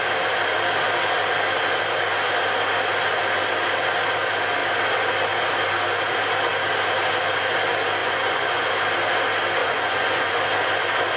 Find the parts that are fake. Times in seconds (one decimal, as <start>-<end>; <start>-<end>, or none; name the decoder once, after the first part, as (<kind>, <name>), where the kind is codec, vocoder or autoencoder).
8.0-8.7 (vocoder, Vocos); 9.6-10.3

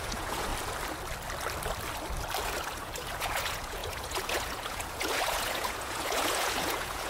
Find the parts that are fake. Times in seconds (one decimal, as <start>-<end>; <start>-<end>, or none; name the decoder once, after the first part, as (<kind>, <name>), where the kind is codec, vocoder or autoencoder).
0.0-0.5 (vocoder, Vocos); 2.4-7.1

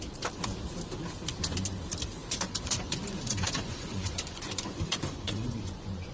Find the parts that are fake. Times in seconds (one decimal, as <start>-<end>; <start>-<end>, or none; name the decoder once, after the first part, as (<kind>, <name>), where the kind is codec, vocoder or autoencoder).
2.2-6.1 (vocoder, Vocos)

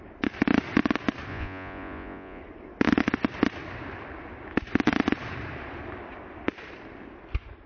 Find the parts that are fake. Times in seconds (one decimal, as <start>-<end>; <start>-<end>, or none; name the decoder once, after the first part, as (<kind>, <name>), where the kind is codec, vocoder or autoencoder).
1.3-2.4 (vocoder, Vocos)